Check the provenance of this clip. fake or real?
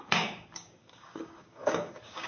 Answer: fake